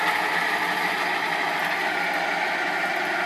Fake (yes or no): no